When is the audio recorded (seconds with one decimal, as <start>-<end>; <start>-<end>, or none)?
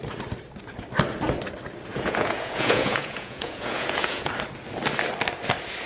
0.0-1.9; 4.3-5.9